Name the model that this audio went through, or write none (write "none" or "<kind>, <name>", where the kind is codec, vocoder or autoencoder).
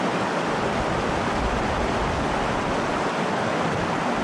none